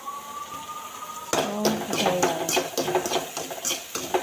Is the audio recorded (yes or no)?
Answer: yes